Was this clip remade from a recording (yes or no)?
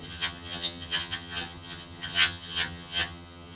yes